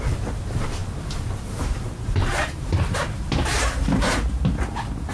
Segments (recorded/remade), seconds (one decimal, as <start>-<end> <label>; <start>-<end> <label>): 0.0-5.1 remade